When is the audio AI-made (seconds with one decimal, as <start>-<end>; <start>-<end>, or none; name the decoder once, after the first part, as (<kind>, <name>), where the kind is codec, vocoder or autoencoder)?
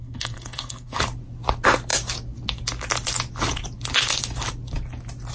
0.0-1.0 (codec, SNAC)